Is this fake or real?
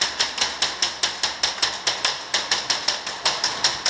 real